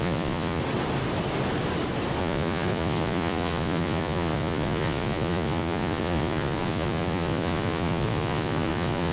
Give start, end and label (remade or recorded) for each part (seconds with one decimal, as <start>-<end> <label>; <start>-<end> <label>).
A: 0.0-0.6 remade; 0.6-2.2 recorded; 2.2-9.1 remade